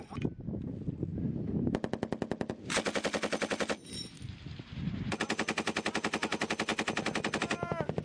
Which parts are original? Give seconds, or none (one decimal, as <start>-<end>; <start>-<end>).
1.1-2.5; 6.7-7.4